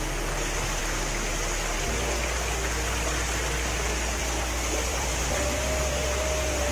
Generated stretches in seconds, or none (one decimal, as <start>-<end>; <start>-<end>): 4.9-5.8